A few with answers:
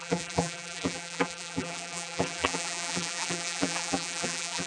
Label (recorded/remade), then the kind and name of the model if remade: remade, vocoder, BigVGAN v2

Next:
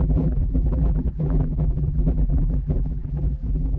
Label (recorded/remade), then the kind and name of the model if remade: remade, vocoder, BigVGAN v2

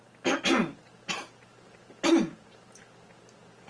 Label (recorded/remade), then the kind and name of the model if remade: recorded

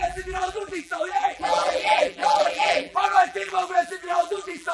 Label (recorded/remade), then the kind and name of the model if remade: remade, vocoder, BigVGAN v2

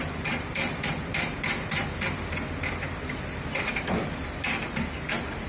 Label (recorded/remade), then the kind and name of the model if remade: remade, vocoder, BigVGAN v2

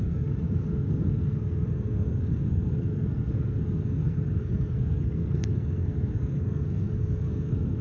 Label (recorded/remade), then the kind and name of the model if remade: remade, codec, SNAC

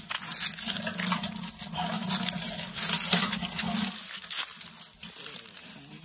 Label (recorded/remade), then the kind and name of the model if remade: recorded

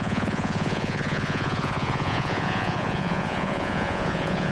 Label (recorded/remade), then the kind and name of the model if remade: remade, vocoder, Vocos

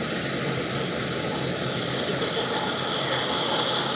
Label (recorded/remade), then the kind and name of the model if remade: recorded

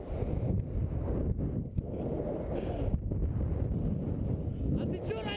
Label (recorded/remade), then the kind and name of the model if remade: recorded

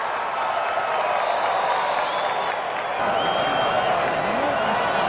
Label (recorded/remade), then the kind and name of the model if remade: recorded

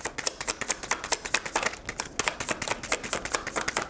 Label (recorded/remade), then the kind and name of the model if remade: recorded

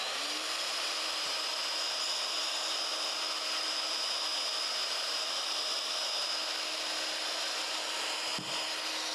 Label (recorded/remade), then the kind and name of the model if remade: recorded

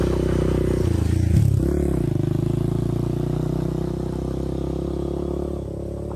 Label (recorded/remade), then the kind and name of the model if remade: recorded